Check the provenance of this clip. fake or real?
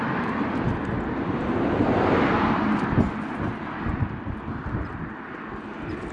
real